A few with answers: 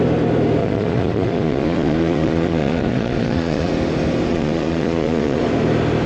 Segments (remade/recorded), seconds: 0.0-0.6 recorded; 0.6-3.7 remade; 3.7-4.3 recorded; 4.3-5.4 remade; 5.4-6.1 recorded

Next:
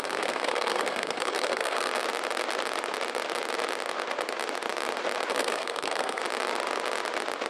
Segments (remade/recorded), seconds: 0.0-1.9 remade; 1.9-5.3 recorded; 5.3-6.2 remade; 6.2-7.5 recorded

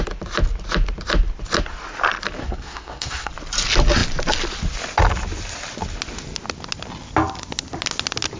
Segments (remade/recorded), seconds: 0.0-2.4 recorded; 2.4-3.3 remade; 3.3-8.4 recorded

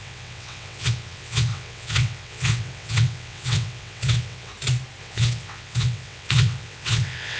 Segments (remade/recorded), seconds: 0.0-4.5 remade; 4.5-5.0 recorded; 5.0-7.4 remade

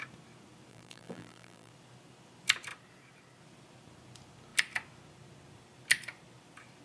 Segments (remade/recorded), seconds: 0.0-0.7 recorded; 0.7-1.7 remade; 1.7-6.8 recorded

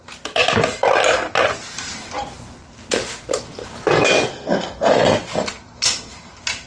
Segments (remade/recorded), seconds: 0.0-4.3 recorded; 4.3-4.9 remade; 4.9-6.7 recorded

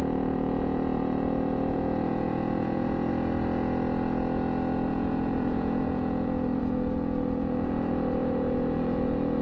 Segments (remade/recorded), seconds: 0.0-3.1 remade; 3.1-4.9 recorded; 4.9-9.4 remade

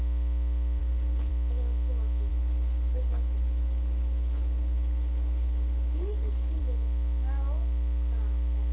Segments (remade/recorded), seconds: 0.0-0.8 recorded; 0.8-1.3 remade; 1.3-2.3 recorded; 2.3-6.6 remade; 6.6-8.7 recorded